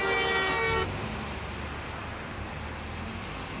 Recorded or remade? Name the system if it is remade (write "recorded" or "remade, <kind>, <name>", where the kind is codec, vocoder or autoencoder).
recorded